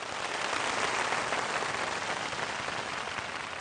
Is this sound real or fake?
real